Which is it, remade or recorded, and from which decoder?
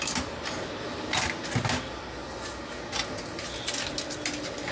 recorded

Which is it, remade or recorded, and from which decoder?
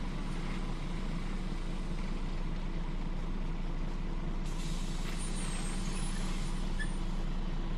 recorded